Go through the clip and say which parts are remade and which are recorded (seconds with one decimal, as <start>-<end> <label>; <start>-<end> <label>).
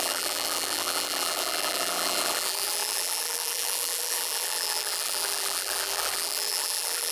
0.0-7.1 remade